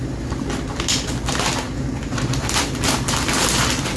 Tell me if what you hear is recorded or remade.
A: recorded